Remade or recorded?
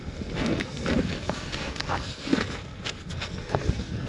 remade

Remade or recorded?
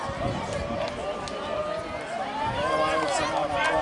recorded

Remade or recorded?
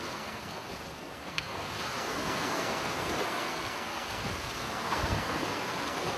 remade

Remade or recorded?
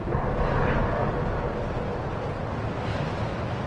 recorded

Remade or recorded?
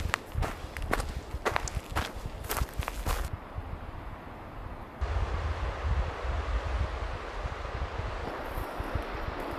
recorded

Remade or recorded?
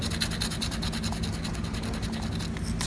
recorded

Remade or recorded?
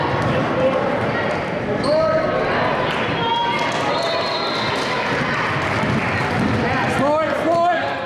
recorded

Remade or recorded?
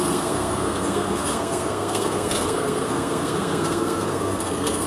remade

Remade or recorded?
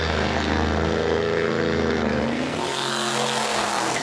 remade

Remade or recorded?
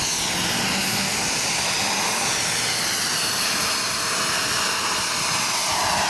recorded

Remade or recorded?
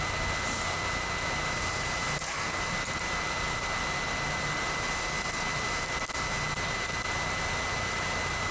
recorded